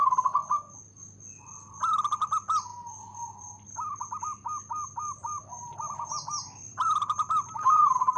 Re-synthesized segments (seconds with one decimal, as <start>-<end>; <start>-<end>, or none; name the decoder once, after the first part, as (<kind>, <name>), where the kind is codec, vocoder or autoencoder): 5.4-8.2 (vocoder, BigVGAN v2)